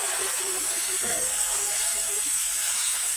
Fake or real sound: fake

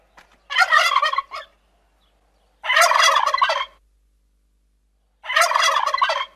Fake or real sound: real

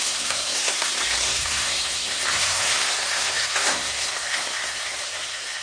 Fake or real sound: fake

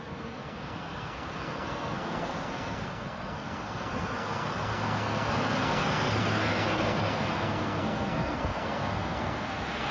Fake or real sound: fake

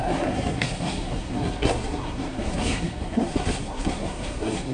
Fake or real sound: fake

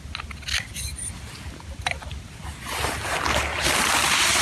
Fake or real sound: real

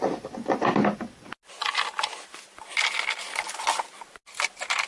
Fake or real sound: real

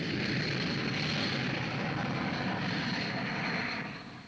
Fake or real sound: real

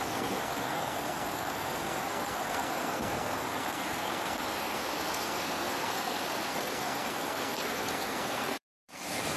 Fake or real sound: fake